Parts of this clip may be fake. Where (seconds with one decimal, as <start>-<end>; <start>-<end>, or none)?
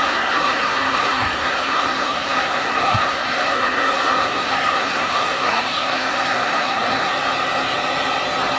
0.0-7.1